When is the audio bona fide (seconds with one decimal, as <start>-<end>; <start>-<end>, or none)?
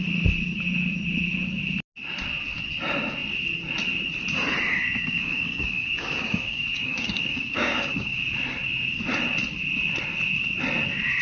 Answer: 0.0-4.7; 8.2-11.2